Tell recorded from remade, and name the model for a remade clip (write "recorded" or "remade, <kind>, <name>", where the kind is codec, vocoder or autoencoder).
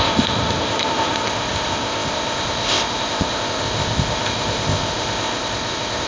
remade, codec, ZipCodec